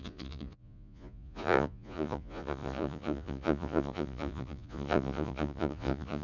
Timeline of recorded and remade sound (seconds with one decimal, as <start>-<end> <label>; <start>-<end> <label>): 0.0-6.2 remade